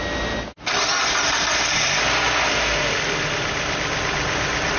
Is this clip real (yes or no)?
yes